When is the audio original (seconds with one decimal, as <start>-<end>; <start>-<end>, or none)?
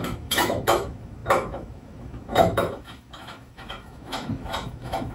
none